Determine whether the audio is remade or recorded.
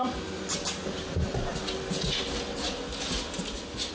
recorded